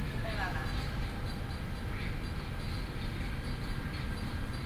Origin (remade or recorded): recorded